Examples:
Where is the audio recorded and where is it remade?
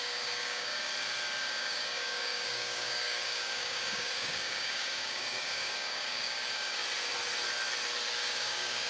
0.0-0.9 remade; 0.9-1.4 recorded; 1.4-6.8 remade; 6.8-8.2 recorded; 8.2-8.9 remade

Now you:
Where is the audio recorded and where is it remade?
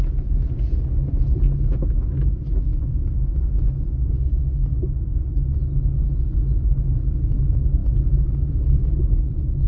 0.0-2.7 recorded; 2.7-4.1 remade; 4.1-9.7 recorded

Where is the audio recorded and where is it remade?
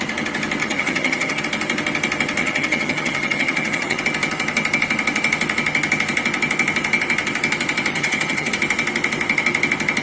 0.0-0.6 recorded; 0.6-1.4 remade; 1.4-2.4 recorded; 2.4-4.0 remade; 4.0-7.9 recorded; 7.9-8.5 remade; 8.5-10.0 recorded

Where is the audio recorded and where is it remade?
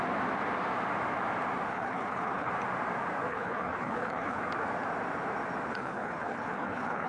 0.0-1.7 recorded; 1.7-2.5 remade; 2.5-3.3 recorded; 3.3-4.4 remade; 4.4-5.7 recorded; 5.7-7.1 remade